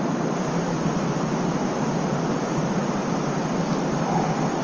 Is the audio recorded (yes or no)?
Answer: yes